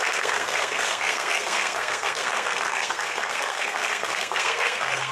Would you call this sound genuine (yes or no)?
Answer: no